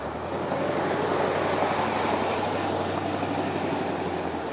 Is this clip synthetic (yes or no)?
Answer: no